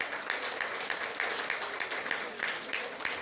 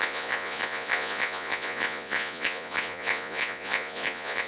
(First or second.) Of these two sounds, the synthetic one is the second